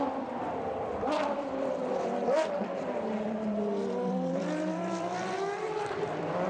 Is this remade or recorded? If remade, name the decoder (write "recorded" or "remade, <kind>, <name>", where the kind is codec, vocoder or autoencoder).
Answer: remade, vocoder, BigVGAN v2